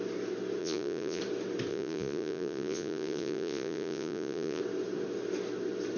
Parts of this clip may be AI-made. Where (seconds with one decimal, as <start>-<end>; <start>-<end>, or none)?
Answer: 0.6-1.2; 1.7-4.6